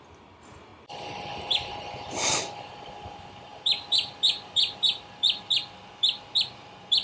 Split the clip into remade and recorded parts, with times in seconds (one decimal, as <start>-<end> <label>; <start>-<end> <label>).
0.0-0.7 remade; 0.7-2.6 recorded; 2.6-7.0 remade